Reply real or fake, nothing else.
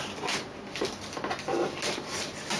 real